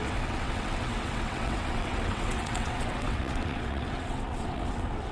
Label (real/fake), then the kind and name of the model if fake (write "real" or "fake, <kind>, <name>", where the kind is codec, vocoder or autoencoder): fake, vocoder, WaveNeXt